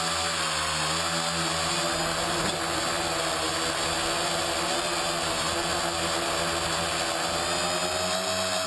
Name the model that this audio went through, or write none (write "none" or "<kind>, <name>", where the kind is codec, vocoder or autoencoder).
none